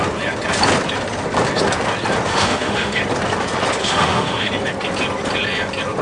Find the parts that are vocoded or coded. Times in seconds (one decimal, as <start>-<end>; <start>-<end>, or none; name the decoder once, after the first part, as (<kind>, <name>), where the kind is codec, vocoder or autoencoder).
2.3-3.0 (autoencoder, DAC-VAE); 3.8-4.5